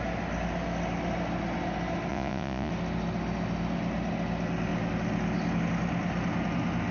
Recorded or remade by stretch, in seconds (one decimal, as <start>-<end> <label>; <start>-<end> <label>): 0.0-2.1 recorded; 2.1-2.7 remade; 2.7-6.9 recorded